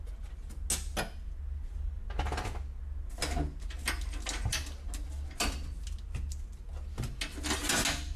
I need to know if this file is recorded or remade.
recorded